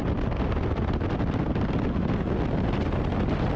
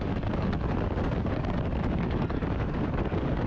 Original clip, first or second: first